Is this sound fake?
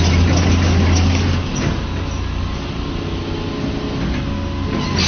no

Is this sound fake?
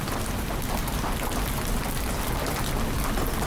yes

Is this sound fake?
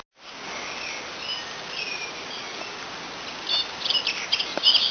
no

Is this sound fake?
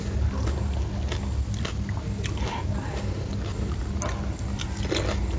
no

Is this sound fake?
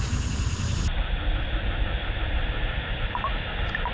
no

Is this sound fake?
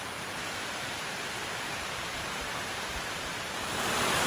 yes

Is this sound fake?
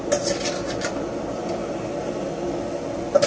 no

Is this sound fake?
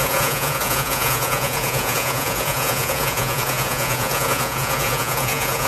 yes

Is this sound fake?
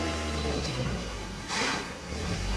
yes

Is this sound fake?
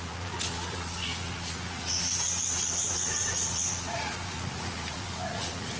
yes